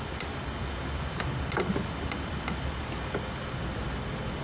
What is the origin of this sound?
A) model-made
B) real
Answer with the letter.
B